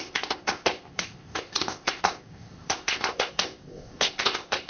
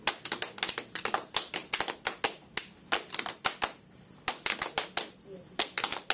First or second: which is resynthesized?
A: first